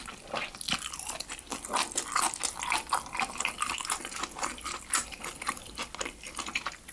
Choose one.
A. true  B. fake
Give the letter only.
A